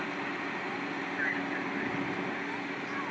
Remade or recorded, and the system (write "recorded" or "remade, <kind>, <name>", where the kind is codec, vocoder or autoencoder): recorded